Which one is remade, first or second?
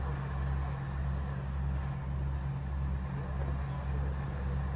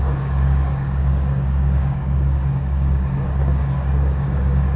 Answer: second